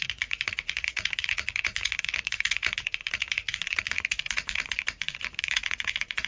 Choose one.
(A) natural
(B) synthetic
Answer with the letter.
B